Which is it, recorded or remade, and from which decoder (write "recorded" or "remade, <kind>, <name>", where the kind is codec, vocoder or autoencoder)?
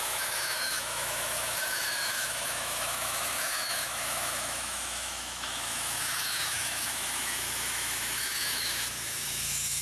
remade, autoencoder, DAC-VAE